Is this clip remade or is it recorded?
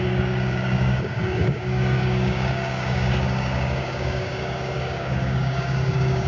remade